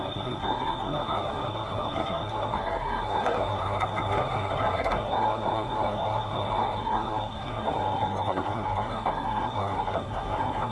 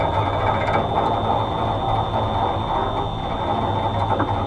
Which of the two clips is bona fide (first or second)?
second